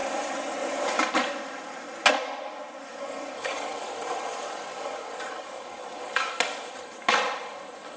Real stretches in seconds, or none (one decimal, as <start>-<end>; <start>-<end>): 0.0-2.9; 3.9-4.7; 6.3-8.0